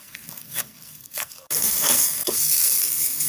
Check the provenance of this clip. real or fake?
fake